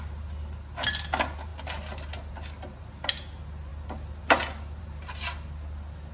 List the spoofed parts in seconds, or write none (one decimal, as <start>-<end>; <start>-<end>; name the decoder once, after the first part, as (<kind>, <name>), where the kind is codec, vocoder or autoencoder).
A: none